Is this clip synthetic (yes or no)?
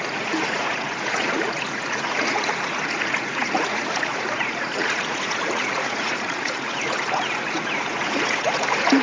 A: yes